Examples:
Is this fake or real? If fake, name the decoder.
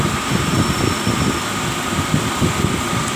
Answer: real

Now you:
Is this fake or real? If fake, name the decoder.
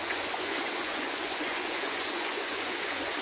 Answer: fake, vocoder, Vocos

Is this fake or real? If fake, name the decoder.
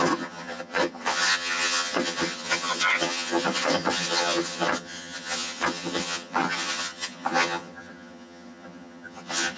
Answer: fake, vocoder, HiFi-GAN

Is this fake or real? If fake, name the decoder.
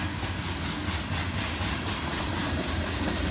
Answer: real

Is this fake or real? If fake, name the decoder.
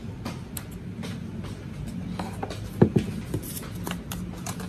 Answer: real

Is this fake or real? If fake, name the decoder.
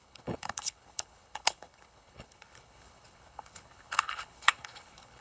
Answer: fake, codec, HILCodec